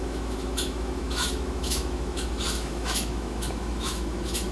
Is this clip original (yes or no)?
no